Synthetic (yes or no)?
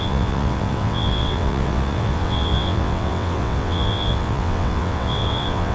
yes